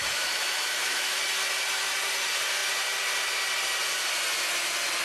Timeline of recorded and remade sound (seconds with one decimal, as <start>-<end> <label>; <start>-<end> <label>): 0.0-1.2 remade; 1.2-5.0 recorded